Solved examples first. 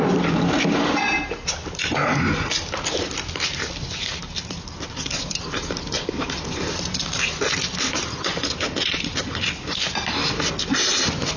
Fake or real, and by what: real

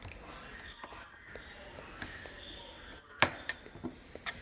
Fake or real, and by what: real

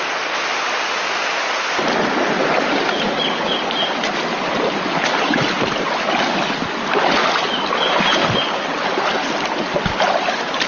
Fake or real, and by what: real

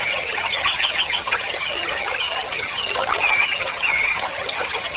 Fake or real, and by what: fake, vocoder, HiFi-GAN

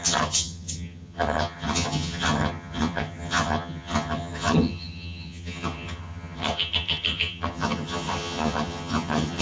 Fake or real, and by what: fake, vocoder, HiFi-GAN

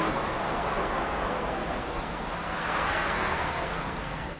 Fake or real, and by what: fake, codec, SNAC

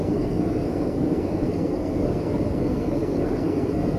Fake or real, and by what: fake, codec, SNAC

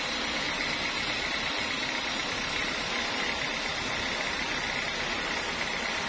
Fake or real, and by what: real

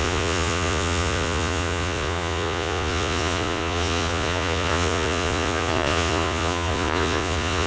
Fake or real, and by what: fake, vocoder, Vocos